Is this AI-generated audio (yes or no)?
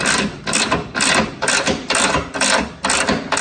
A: no